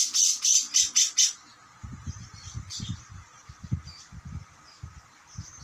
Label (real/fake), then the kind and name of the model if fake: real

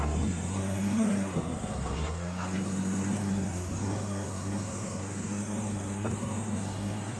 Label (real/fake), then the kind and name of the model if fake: fake, codec, SNAC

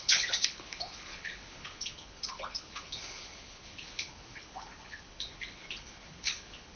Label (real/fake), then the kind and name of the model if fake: fake, codec, HILCodec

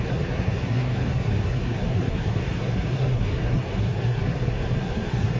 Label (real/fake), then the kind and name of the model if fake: fake, codec, SNAC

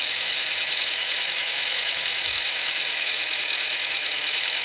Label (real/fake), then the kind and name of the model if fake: fake, autoencoder, DAC-VAE